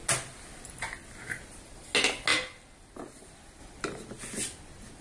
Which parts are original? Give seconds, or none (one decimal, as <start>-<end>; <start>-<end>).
0.0-5.0